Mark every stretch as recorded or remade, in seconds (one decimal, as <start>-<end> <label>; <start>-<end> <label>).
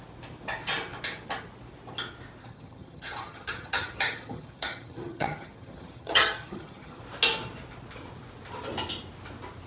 0.0-2.4 recorded; 2.4-7.0 remade; 7.0-9.7 recorded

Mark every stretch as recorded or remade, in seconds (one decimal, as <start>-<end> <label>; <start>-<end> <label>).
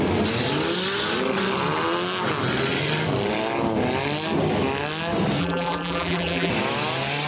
0.0-5.4 recorded; 5.4-6.5 remade; 6.5-7.3 recorded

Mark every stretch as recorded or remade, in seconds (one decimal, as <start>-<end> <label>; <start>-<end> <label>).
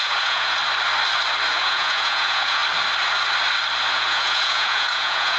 0.0-0.6 remade; 0.6-1.5 recorded; 1.5-2.6 remade; 2.6-3.9 recorded; 3.9-5.4 remade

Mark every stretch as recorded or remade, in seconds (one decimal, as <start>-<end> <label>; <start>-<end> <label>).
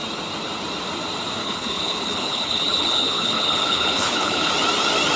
0.0-1.4 recorded; 1.4-4.5 remade; 4.5-5.2 recorded